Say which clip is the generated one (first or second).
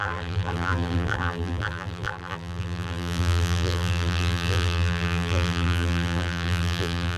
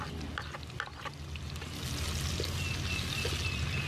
first